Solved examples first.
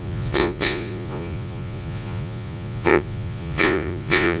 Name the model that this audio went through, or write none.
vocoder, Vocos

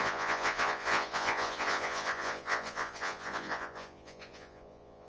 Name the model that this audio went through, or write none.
vocoder, Vocos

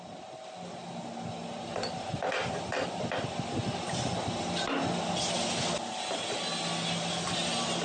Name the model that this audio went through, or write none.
none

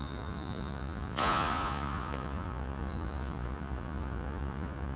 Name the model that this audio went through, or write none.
vocoder, Vocos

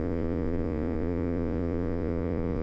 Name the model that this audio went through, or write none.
vocoder, Vocos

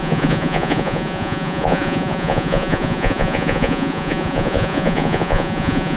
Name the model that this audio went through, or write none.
vocoder, Vocos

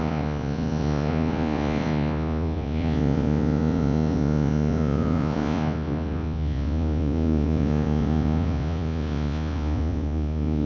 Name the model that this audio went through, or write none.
vocoder, Vocos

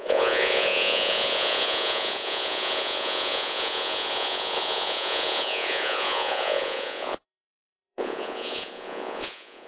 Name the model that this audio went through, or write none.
vocoder, Vocos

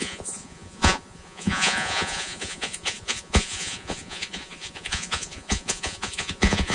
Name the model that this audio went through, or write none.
vocoder, Vocos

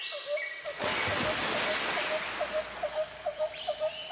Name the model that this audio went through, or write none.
none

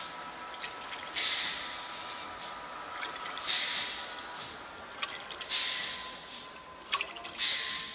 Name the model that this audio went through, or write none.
none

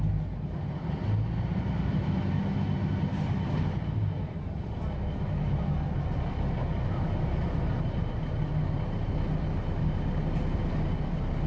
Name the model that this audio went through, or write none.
none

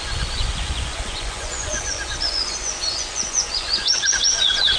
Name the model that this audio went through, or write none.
vocoder, Vocos